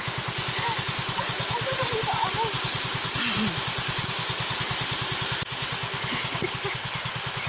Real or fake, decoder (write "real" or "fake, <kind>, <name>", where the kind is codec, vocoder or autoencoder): real